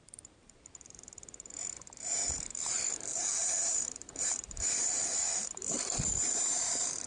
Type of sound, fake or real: fake